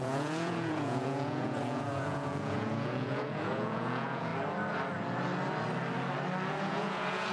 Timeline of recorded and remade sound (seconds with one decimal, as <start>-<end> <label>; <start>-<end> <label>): 0.0-4.3 remade; 4.3-6.5 recorded; 6.5-7.3 remade

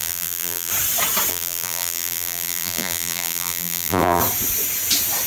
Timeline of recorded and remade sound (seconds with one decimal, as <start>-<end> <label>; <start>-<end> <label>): 0.0-0.7 remade; 0.7-1.3 recorded; 1.3-4.2 remade; 4.2-5.3 recorded

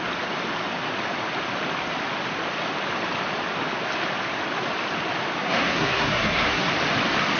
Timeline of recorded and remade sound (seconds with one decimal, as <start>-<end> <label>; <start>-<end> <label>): 0.0-5.4 recorded; 5.4-6.7 remade; 6.7-7.4 recorded

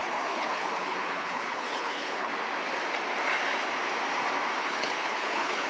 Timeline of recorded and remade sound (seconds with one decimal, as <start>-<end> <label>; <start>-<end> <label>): 0.0-2.3 remade; 2.3-4.6 recorded; 4.6-5.7 remade

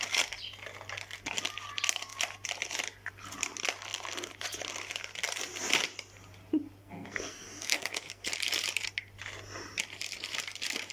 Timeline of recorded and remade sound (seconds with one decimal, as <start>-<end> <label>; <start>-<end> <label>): 0.0-6.8 recorded; 6.8-8.3 remade; 8.3-10.9 recorded